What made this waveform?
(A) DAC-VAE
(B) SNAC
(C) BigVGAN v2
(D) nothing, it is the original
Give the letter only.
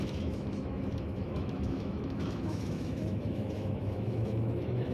A